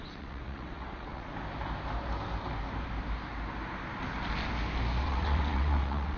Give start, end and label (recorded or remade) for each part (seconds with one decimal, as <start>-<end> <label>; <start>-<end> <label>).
0.0-1.3 remade; 1.3-5.0 recorded; 5.0-6.2 remade